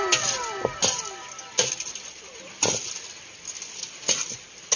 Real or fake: real